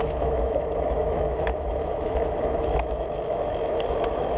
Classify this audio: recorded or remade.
remade